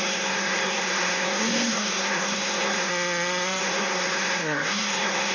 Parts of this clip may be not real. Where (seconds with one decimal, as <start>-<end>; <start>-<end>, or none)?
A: 0.0-2.9; 3.6-5.3